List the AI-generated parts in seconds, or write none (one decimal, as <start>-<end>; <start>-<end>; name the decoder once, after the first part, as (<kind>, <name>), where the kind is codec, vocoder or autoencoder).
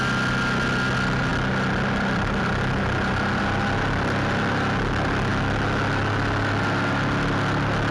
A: none